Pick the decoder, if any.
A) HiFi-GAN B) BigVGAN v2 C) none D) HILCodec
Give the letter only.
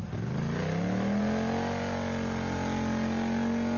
C